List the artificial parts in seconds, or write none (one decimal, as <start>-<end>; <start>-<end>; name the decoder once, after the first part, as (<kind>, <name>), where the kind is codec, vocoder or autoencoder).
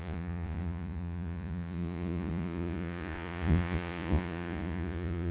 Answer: 0.0-5.3 (vocoder, Vocos)